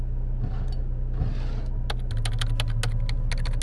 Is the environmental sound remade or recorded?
recorded